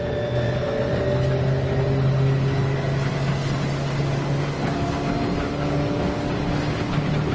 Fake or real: real